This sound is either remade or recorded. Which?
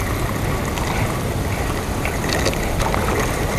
recorded